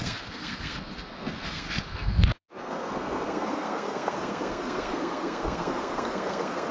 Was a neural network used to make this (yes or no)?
yes